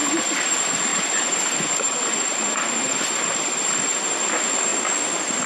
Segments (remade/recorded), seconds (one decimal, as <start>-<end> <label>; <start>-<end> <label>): 0.0-0.5 remade; 0.5-0.9 recorded; 0.9-4.2 remade; 4.2-5.5 recorded